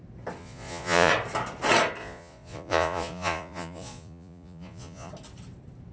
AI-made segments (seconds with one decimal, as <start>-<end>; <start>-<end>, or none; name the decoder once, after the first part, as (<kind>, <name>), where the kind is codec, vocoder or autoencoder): 0.4-1.1 (vocoder, Vocos); 2.0-5.1